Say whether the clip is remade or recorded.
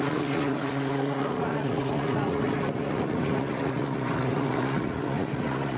remade